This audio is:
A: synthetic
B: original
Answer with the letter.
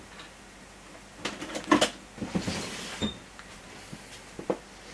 B